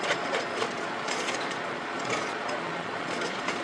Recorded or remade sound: remade